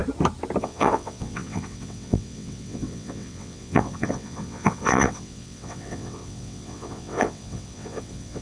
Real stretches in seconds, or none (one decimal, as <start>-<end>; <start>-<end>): 0.0-0.6